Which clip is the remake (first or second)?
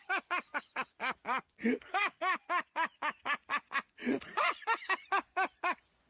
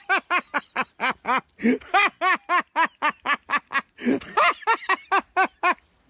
first